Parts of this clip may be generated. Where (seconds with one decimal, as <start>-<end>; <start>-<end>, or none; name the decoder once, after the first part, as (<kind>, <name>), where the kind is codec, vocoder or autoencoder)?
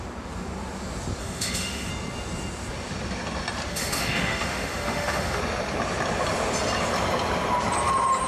1.2-1.9 (autoencoder, DAC-VAE); 3.7-5.4